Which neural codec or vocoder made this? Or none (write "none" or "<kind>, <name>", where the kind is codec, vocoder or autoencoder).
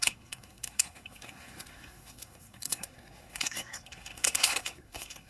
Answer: codec, SNAC